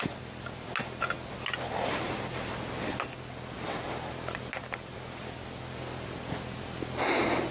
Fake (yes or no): no